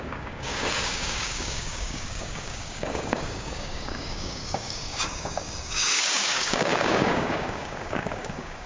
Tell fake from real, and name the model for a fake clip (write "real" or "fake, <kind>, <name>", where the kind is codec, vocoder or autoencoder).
fake, codec, DAC